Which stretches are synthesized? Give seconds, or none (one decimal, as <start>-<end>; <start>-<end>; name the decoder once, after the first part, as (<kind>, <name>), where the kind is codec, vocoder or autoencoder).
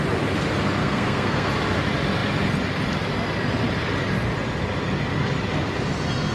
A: 0.8-1.5 (codec, SNAC)